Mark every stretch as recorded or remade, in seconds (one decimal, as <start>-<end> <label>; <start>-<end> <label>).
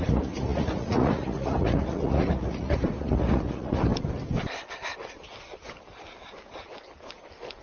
0.0-3.9 remade; 3.9-7.6 recorded